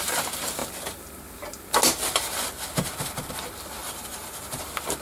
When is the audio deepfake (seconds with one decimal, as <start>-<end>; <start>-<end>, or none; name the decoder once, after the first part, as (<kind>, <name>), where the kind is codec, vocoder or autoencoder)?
3.8-4.6 (vocoder, BigVGAN v2)